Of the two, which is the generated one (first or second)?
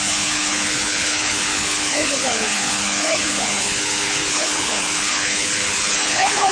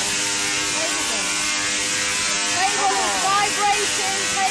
first